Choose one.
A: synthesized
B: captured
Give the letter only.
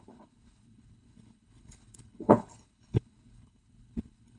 A